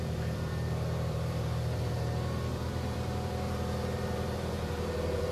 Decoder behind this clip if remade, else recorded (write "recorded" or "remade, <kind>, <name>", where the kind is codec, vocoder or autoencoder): remade, vocoder, BigVGAN v2